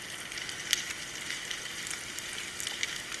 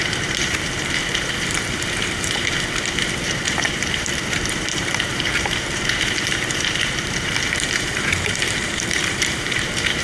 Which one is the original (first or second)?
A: first